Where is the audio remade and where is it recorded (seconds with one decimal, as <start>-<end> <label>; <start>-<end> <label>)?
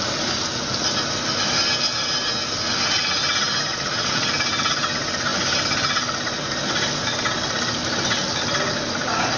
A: 0.0-3.7 recorded; 3.7-4.3 remade; 4.3-9.4 recorded